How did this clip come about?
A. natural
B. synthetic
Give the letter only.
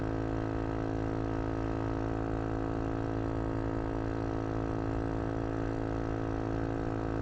A